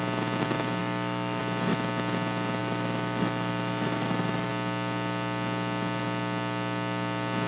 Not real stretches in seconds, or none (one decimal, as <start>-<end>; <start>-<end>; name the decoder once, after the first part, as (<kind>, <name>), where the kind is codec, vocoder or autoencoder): 0.8-1.4 (autoencoder, DAC-VAE); 2.6-4.5